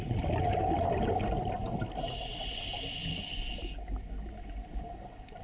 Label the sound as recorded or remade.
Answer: recorded